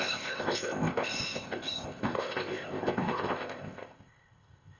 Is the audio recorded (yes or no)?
no